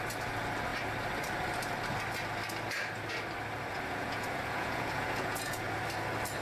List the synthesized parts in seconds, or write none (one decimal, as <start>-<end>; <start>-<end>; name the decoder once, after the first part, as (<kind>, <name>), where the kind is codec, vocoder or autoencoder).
3.7-5.7 (vocoder, Vocos)